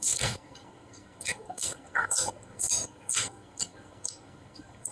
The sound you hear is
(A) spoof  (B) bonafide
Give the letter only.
A